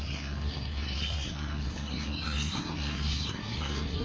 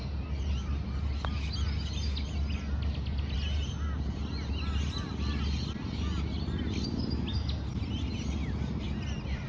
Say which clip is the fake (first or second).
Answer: first